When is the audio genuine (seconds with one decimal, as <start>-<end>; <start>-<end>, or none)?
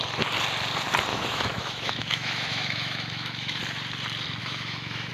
0.0-1.1; 3.6-4.4